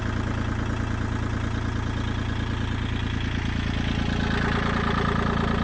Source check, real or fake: real